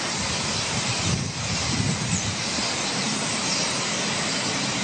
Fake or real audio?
fake